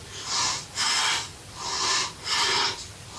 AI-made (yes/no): no